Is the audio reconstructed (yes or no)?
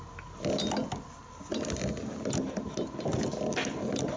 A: no